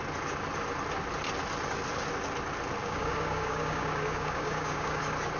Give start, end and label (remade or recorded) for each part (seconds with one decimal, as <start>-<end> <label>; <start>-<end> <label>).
0.0-2.8 recorded; 2.8-5.0 remade; 5.0-5.4 recorded